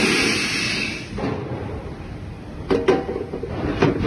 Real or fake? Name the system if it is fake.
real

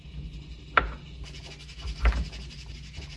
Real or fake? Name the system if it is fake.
real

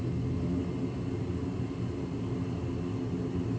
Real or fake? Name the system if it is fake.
real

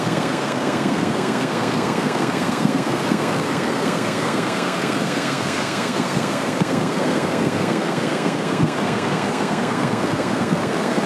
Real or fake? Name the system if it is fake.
fake, codec, SNAC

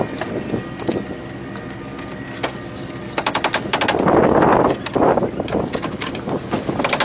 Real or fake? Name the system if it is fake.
real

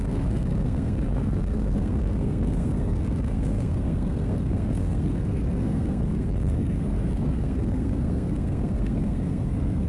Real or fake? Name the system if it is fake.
fake, codec, SNAC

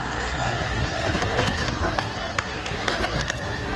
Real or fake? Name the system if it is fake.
fake, codec, SNAC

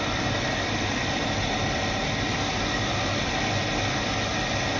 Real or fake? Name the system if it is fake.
real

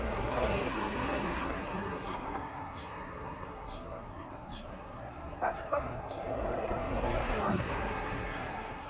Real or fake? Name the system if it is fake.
fake, codec, SNAC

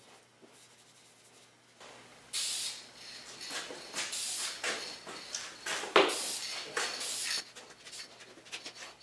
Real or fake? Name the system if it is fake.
real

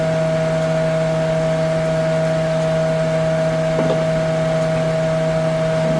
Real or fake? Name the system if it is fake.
real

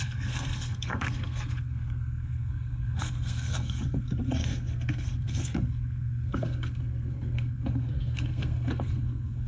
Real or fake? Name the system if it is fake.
fake, codec, SNAC